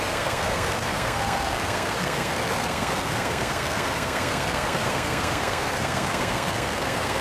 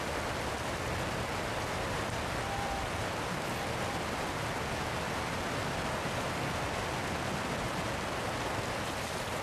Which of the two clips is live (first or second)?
second